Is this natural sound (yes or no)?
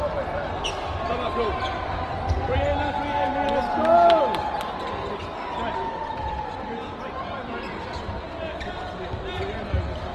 yes